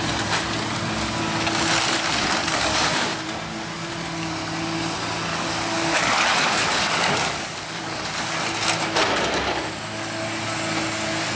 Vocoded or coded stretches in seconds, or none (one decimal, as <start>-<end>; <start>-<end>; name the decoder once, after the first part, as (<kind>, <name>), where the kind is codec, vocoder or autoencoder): 2.4-3.2 (codec, DAC); 5.3-8.4